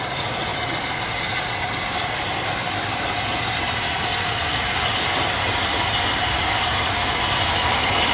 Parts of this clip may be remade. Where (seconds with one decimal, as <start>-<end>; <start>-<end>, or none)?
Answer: none